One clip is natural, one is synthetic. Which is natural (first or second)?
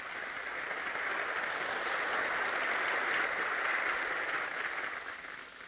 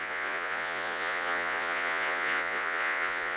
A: first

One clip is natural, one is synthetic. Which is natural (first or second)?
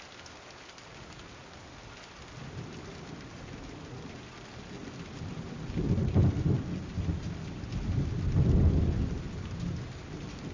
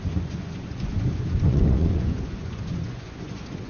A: first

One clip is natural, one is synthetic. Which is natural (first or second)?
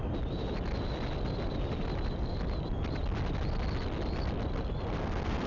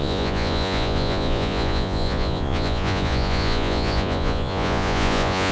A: first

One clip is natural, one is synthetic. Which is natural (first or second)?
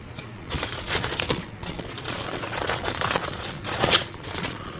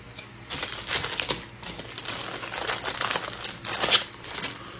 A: second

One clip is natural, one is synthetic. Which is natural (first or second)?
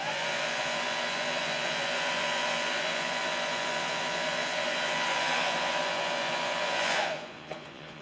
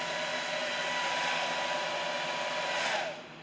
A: second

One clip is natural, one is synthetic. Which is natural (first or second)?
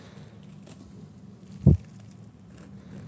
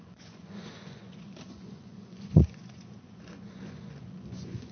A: first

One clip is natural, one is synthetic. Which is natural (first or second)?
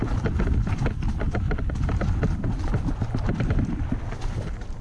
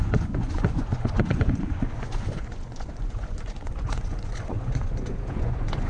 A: first